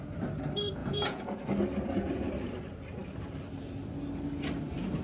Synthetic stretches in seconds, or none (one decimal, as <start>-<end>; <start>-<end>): 0.8-1.4